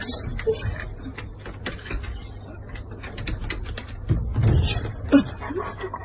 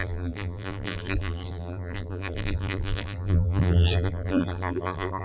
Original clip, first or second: first